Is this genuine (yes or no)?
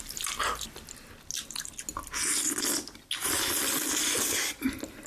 yes